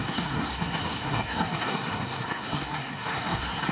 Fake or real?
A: fake